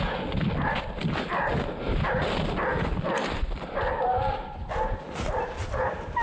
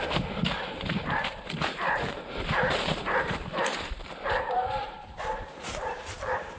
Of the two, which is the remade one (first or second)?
second